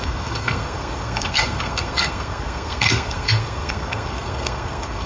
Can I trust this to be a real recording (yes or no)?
no